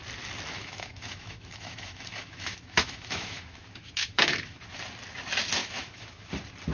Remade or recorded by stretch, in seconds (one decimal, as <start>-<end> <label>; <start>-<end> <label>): 0.0-0.6 recorded; 0.6-4.6 remade; 4.6-5.6 recorded; 5.6-6.3 remade; 6.3-6.7 recorded